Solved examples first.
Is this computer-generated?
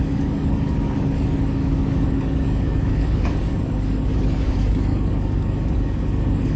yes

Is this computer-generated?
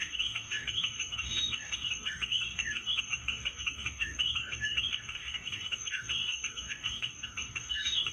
yes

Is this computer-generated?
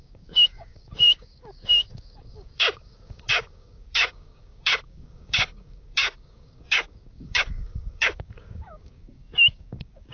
yes